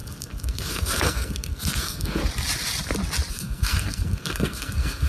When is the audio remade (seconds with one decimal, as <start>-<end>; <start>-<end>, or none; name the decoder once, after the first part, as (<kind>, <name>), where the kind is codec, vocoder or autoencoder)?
0.0-2.2 (codec, SNAC); 3.3-5.1